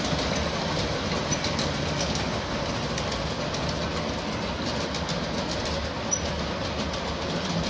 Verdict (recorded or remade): recorded